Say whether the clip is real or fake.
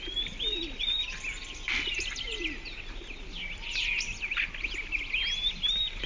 real